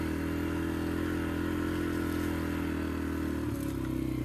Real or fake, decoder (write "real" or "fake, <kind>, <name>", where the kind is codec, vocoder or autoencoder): real